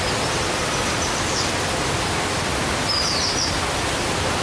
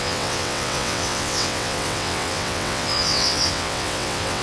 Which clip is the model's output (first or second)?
second